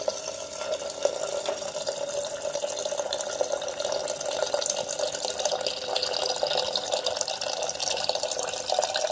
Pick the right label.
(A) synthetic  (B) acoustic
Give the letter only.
B